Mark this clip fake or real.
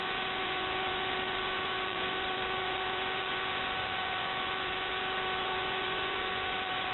fake